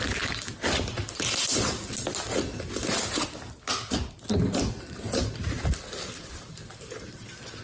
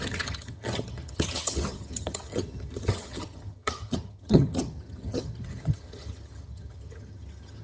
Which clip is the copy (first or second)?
second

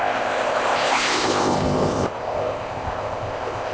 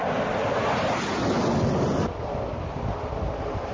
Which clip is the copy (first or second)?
first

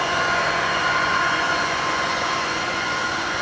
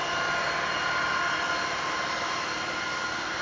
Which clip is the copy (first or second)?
first